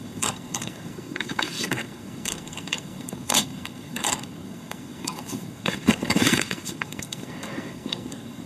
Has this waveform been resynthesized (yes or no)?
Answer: yes